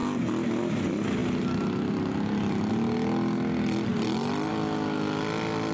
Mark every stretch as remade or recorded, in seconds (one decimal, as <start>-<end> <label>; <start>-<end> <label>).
0.0-5.7 recorded